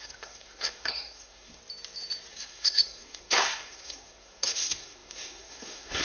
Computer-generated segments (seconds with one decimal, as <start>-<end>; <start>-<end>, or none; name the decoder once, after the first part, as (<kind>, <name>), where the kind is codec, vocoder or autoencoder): 0.0-1.6 (codec, SNAC); 2.3-6.0

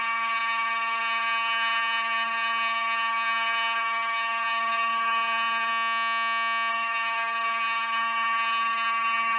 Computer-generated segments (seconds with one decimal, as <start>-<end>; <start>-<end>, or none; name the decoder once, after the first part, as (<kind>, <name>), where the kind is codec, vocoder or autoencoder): 0.0-5.7 (codec, SNAC); 6.7-9.4

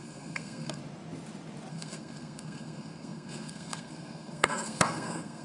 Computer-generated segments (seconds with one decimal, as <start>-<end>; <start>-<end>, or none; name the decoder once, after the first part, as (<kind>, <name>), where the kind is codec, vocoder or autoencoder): 0.0-0.8 (codec, SNAC); 1.7-5.4

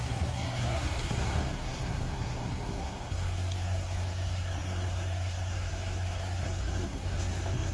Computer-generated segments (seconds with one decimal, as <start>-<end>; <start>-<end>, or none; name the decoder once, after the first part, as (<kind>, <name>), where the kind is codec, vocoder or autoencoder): 0.0-7.7 (codec, SNAC)

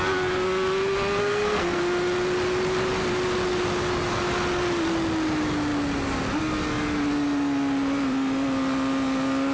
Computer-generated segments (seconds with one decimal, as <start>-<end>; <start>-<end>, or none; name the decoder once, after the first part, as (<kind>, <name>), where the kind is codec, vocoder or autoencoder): 1.2-1.8 (codec, SNAC)

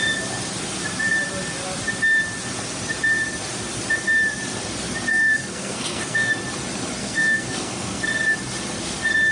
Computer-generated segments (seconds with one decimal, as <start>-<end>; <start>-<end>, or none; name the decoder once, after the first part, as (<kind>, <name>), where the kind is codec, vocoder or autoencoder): 5.1-6.4 (codec, SNAC); 7.0-8.1

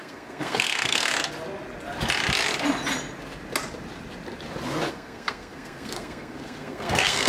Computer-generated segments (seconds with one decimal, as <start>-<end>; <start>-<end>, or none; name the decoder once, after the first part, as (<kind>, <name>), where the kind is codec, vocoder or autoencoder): 0.0-1.1 (codec, SNAC); 4.9-7.3